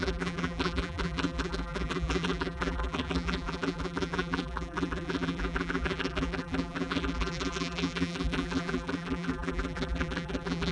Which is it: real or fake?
fake